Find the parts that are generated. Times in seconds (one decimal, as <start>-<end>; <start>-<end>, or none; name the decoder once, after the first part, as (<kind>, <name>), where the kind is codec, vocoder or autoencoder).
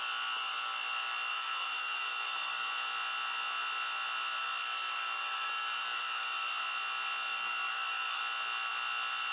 1.3-2.7 (autoencoder, DAC-VAE); 4.4-6.6; 7.3-8.2